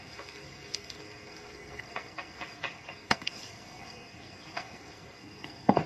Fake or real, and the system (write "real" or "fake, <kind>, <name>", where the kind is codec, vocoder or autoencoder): fake, codec, SNAC